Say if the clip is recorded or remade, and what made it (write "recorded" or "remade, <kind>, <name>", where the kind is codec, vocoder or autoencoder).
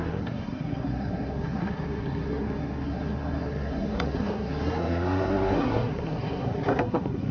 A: remade, codec, SNAC